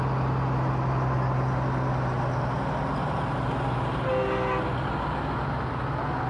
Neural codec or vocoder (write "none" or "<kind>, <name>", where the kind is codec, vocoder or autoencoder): none